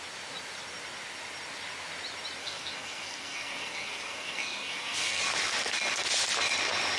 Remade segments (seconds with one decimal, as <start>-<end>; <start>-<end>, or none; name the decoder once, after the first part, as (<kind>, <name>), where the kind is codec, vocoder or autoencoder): 2.4-5.2 (codec, SNAC)